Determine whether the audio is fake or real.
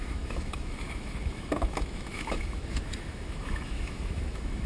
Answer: fake